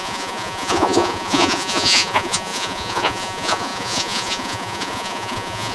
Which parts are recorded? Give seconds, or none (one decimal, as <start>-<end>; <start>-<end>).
none